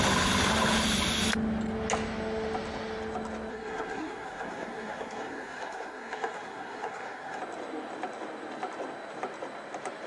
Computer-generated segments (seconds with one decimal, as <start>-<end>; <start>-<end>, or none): 3.5-7.4